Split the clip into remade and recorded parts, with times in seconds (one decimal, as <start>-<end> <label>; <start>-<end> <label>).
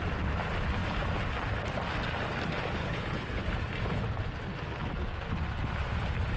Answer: 0.0-2.8 recorded; 2.8-3.4 remade; 3.4-6.4 recorded